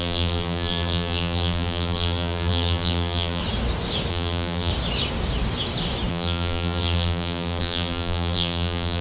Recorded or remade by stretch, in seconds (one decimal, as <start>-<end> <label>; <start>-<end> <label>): 0.0-3.4 remade; 3.4-4.1 recorded; 4.1-4.7 remade; 4.7-6.1 recorded; 6.1-9.0 remade